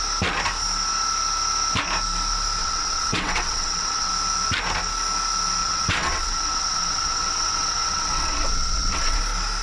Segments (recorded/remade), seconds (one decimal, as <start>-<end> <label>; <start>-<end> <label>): 0.0-2.6 recorded; 2.6-4.1 remade; 4.1-5.6 recorded; 5.6-9.2 remade; 9.2-9.6 recorded

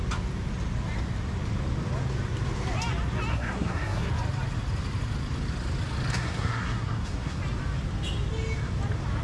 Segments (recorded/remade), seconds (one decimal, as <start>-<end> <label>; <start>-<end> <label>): 0.0-3.3 recorded; 3.3-4.1 remade; 4.1-6.1 recorded; 6.1-7.4 remade; 7.4-9.2 recorded

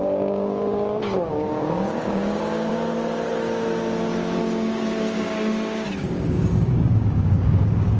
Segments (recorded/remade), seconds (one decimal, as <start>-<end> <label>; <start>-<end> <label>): 0.0-2.7 remade; 2.7-4.4 recorded; 4.4-8.0 remade

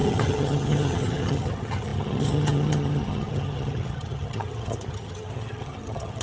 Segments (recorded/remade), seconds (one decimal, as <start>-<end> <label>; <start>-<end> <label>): 0.0-6.2 remade

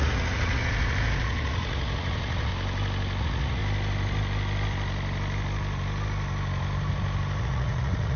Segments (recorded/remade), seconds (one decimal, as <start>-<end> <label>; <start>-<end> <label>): 0.0-2.5 remade; 2.5-3.2 recorded; 3.2-3.6 remade; 3.6-7.4 recorded; 7.4-8.2 remade

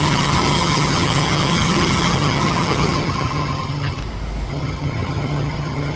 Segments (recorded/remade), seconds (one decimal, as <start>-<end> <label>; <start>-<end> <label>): 0.0-4.0 remade; 4.0-4.5 recorded; 4.5-6.0 remade